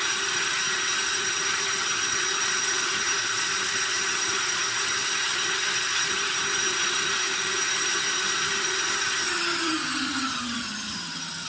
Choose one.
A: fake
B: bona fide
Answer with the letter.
A